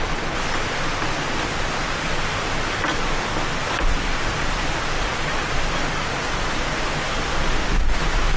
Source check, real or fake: real